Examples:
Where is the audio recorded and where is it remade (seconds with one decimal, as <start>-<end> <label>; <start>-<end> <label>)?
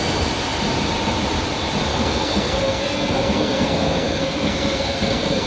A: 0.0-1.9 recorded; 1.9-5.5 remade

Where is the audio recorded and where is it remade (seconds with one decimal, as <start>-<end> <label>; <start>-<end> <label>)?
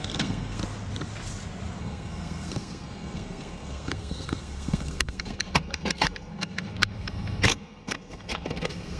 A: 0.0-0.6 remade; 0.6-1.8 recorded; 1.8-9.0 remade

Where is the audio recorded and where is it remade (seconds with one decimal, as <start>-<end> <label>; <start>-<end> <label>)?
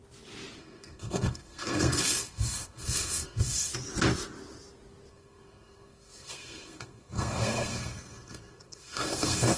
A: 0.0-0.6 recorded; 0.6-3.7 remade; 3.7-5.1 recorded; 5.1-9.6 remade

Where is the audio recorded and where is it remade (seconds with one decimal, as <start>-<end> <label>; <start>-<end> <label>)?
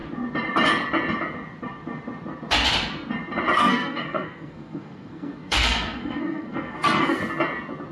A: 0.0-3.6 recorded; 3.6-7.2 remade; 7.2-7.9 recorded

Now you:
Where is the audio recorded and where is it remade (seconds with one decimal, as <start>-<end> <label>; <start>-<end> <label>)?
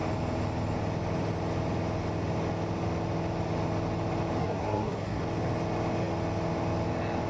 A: 0.0-4.4 recorded; 4.4-5.2 remade; 5.2-7.3 recorded